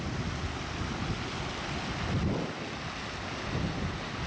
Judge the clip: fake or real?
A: real